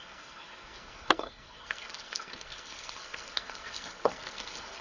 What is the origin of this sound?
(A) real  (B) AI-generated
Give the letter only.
B